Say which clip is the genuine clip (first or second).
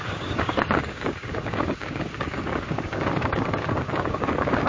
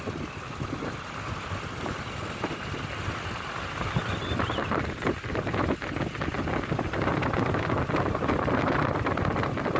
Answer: second